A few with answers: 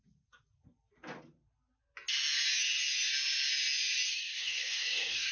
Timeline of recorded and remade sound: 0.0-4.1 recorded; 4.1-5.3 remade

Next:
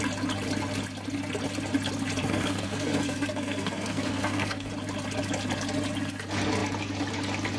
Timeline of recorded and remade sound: 0.0-2.2 recorded; 2.2-4.7 remade; 4.7-7.6 recorded